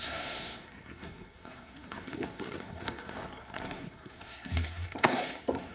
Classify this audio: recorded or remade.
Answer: remade